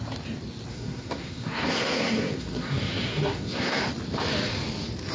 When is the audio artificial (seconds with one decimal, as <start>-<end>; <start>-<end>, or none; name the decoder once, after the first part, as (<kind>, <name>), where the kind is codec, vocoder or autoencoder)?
0.7-3.8 (codec, SNAC)